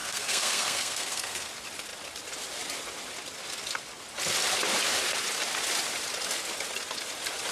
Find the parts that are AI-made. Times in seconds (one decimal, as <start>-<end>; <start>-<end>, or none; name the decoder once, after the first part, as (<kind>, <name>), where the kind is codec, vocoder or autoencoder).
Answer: 0.0-1.5 (codec, SNAC)